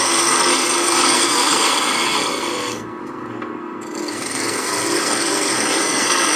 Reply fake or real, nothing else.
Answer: fake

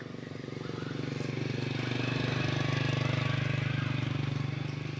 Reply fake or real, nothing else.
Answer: real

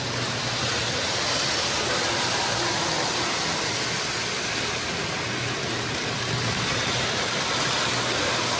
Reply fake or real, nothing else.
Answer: real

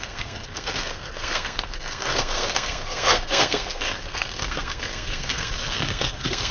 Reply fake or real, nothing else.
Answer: fake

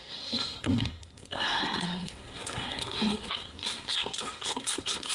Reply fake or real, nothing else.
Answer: fake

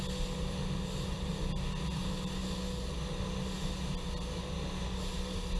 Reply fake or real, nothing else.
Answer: real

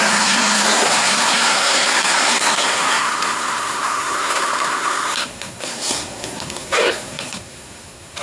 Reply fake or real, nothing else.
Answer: fake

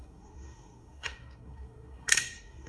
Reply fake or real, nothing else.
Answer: fake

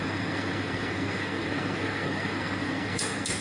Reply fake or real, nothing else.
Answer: fake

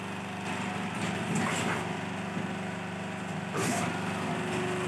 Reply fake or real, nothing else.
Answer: real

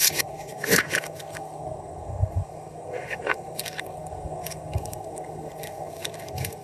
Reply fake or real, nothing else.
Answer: fake